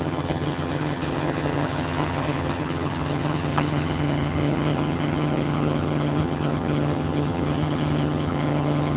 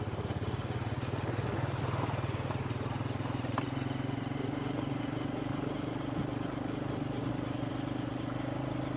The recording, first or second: second